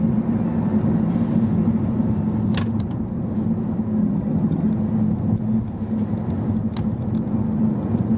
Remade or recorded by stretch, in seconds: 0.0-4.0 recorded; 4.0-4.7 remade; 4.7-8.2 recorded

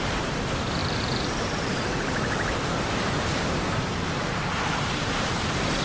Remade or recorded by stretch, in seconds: 0.0-5.8 remade

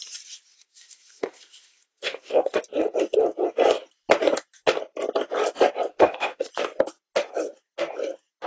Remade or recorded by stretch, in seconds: 0.0-0.5 recorded; 0.5-2.6 remade; 2.6-5.9 recorded; 5.9-6.5 remade; 6.5-8.5 recorded

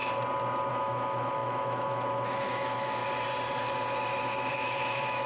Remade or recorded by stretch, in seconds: 0.0-0.7 recorded; 0.7-3.0 remade; 3.0-4.5 recorded; 4.5-5.3 remade

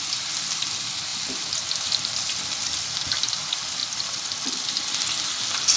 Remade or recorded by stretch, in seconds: 0.0-1.1 recorded; 1.1-2.7 remade; 2.7-3.8 recorded; 3.8-4.6 remade; 4.6-5.8 recorded